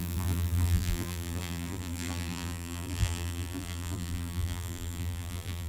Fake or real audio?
fake